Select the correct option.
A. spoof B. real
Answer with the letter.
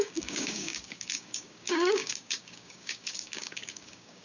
A